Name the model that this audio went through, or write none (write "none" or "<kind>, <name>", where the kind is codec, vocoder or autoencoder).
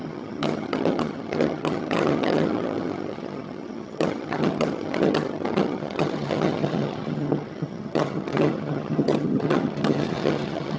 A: vocoder, HiFi-GAN